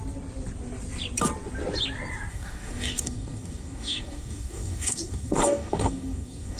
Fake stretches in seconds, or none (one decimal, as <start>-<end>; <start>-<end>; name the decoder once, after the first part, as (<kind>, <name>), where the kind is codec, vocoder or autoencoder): 2.3-6.6 (codec, DAC)